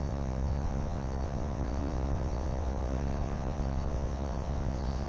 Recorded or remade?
remade